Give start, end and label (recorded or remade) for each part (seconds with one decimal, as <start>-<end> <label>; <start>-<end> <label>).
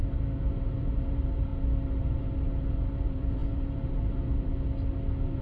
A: 0.0-1.5 remade; 1.5-2.0 recorded; 2.0-4.5 remade; 4.5-5.4 recorded